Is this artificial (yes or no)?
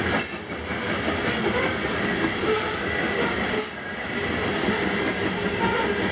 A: no